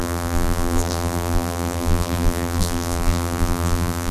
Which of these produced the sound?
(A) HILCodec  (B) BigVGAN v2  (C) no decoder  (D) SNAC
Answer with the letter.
B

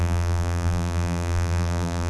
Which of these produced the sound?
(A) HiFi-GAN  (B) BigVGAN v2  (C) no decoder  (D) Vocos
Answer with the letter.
B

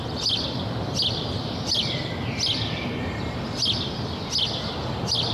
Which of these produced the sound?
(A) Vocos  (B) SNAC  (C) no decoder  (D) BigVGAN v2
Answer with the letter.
C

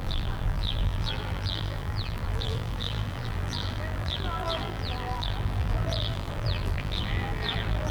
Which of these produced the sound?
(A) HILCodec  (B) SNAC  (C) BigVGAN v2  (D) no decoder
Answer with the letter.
C